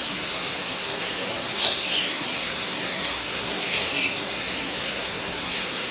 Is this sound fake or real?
fake